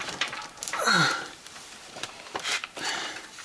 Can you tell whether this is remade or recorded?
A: remade